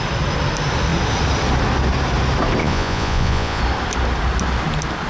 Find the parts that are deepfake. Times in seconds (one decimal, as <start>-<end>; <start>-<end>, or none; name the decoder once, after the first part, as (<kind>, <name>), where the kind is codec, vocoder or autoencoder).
2.6-3.6 (vocoder, Vocos)